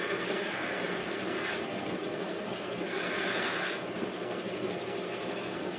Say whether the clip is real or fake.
fake